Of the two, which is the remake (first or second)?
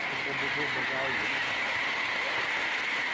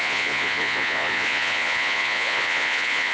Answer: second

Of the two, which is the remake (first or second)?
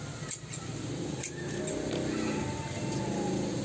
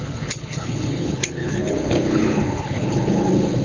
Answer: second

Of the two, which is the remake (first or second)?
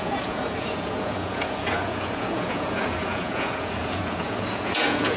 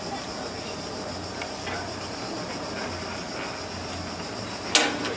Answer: first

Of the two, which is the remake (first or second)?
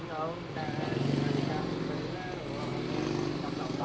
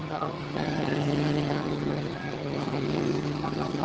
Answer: second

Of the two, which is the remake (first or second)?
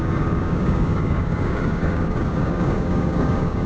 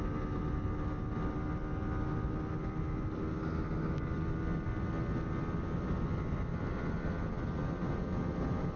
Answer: first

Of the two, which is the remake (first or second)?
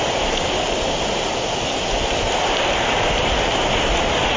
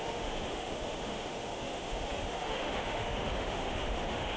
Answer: second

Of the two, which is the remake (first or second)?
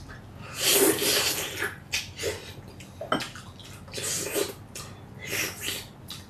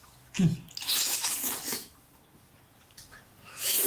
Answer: second